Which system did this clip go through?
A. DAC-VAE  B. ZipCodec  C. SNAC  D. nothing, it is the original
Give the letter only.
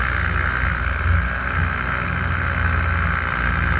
D